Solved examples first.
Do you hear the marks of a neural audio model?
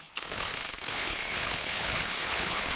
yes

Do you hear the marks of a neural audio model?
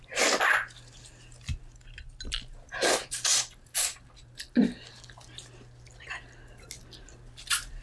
no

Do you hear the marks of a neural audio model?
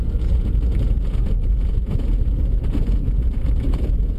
yes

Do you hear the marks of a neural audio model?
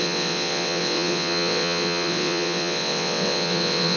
yes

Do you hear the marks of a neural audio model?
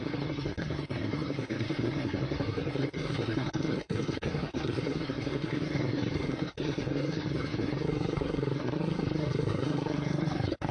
yes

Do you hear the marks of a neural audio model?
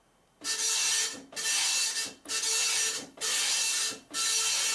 no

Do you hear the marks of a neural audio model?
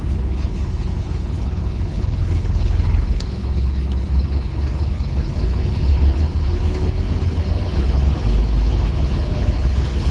yes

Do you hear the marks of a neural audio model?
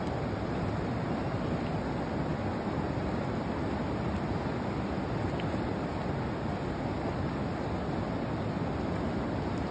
no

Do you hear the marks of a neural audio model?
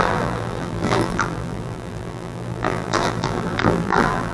yes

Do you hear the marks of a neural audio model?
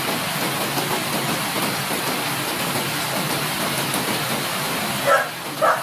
no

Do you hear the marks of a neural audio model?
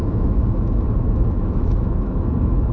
yes